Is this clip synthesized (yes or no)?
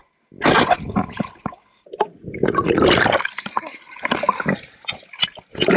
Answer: no